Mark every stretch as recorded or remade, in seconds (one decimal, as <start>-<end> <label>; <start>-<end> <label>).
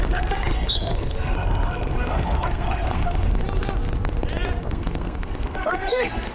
0.0-3.4 remade; 3.4-4.6 recorded; 4.6-6.3 remade